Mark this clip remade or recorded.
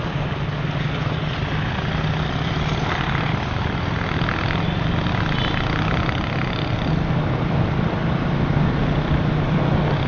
recorded